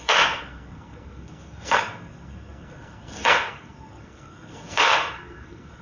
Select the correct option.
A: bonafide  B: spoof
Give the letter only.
B